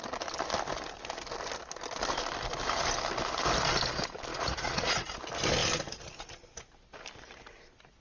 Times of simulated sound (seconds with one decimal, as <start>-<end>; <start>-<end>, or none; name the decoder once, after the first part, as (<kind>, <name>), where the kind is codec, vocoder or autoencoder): 4.3-5.1 (vocoder, Vocos)